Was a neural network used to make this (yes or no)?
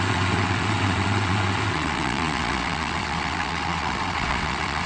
yes